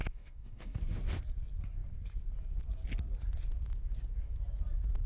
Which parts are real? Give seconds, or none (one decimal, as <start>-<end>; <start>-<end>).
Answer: 0.8-5.1